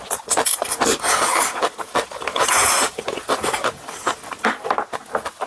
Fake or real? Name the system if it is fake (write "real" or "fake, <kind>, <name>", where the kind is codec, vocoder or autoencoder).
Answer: real